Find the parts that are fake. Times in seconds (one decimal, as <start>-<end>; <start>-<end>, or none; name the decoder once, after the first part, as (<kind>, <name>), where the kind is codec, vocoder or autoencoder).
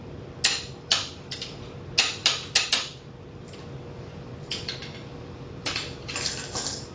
none